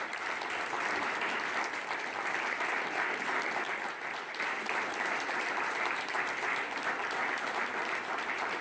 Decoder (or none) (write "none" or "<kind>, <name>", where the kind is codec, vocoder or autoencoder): none